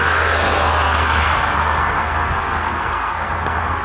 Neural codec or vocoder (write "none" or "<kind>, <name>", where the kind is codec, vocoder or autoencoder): codec, SNAC